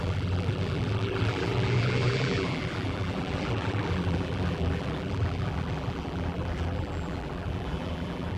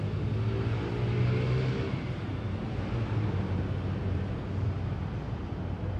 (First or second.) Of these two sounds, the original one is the second